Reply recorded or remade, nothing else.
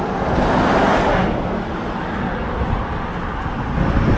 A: recorded